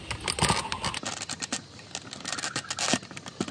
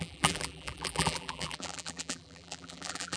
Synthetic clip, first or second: second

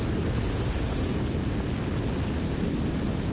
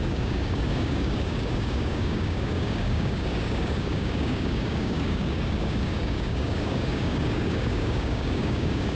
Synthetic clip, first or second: second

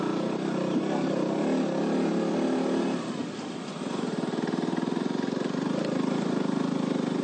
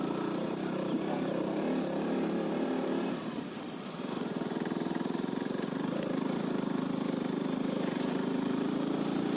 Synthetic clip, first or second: second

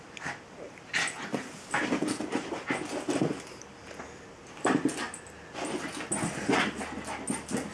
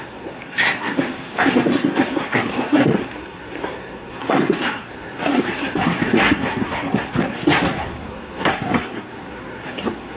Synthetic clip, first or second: second